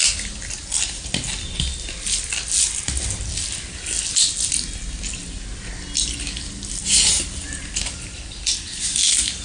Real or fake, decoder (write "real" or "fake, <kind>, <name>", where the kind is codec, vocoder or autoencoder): real